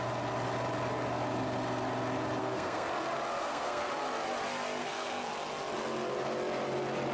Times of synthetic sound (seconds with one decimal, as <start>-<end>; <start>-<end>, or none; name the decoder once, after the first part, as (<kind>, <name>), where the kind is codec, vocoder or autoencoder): 2.4-2.9 (codec, SNAC); 3.4-3.9; 4.8-5.3